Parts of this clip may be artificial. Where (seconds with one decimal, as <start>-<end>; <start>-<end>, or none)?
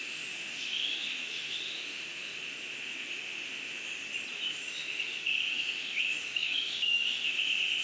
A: 0.0-4.0; 4.5-7.8